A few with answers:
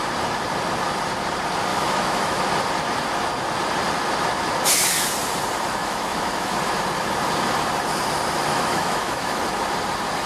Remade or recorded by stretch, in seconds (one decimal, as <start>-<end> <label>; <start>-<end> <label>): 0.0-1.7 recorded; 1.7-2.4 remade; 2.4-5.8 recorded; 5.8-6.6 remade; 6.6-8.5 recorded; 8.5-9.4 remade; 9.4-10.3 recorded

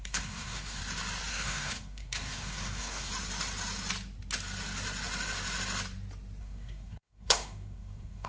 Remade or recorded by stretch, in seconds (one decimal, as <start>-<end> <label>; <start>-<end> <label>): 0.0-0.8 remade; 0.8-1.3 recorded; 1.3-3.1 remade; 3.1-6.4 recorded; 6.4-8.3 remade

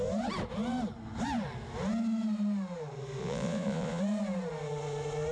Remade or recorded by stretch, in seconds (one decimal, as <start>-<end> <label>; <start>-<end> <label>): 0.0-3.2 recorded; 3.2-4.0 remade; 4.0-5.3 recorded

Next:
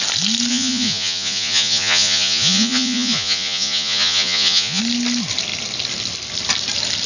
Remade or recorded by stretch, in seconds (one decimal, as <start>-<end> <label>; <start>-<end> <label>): 0.0-0.5 recorded; 0.5-4.8 remade; 4.8-7.1 recorded

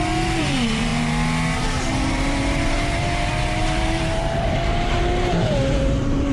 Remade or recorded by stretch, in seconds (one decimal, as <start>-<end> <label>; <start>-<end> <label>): 0.0-0.9 remade; 0.9-2.1 recorded; 2.1-6.3 remade